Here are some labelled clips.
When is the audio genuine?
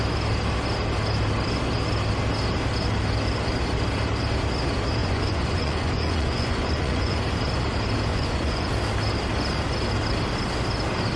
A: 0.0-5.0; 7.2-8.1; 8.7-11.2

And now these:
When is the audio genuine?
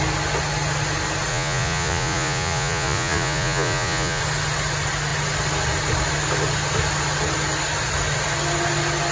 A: 0.0-1.3; 4.2-9.1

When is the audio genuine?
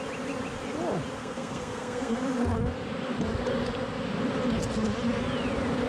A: 0.0-1.2; 2.2-5.9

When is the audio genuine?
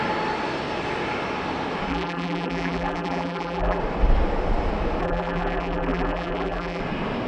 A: 0.0-1.9; 3.8-5.0; 6.8-7.3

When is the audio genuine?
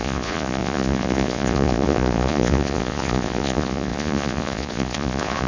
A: none